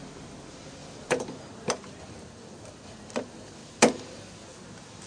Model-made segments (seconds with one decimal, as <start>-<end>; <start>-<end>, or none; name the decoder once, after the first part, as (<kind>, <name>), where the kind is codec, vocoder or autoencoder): none